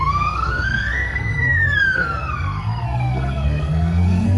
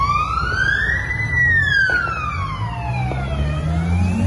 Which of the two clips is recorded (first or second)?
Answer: second